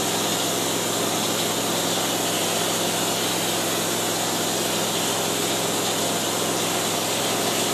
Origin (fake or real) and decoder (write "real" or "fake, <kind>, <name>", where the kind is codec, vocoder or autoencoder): real